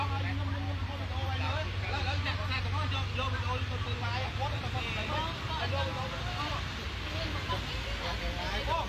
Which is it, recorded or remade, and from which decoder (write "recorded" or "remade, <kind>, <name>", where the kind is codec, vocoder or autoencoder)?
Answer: recorded